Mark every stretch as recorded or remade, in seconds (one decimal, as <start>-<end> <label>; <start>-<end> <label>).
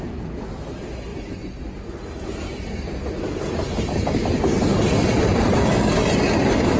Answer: 0.0-6.8 recorded